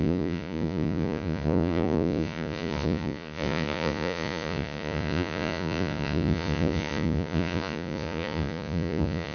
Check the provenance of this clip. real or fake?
fake